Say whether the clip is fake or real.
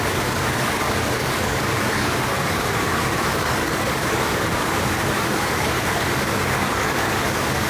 fake